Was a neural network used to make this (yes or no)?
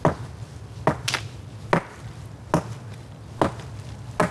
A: no